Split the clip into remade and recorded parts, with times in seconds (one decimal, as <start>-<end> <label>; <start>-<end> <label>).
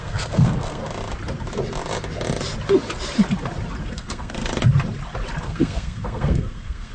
0.0-0.8 remade; 0.8-3.8 recorded; 3.8-4.5 remade; 4.5-5.4 recorded; 5.4-6.9 remade